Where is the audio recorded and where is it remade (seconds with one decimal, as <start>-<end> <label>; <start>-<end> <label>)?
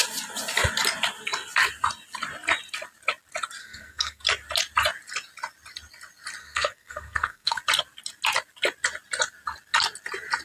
0.0-3.6 recorded; 3.6-4.2 remade; 4.2-6.4 recorded; 6.4-7.6 remade; 7.6-10.4 recorded